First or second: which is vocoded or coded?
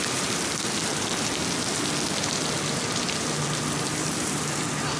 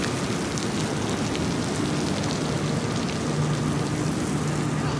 first